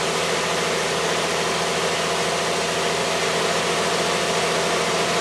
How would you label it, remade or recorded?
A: recorded